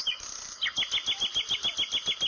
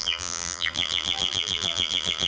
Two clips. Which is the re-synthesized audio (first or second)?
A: second